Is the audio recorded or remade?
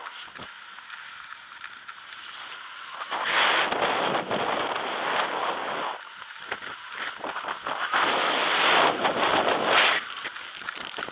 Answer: recorded